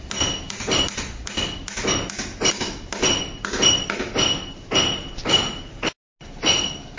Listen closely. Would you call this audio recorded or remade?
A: recorded